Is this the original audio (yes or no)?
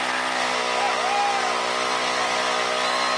yes